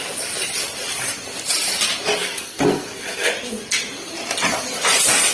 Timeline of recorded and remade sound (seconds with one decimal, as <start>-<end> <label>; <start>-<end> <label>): 0.0-2.2 recorded; 2.2-3.3 remade; 3.3-5.3 recorded